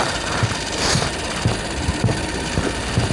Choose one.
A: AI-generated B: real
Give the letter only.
B